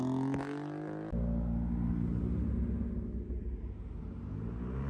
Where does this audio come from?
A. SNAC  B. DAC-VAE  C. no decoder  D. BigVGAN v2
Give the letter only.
C